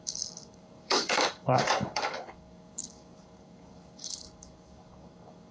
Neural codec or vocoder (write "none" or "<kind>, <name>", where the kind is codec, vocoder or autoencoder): codec, DAC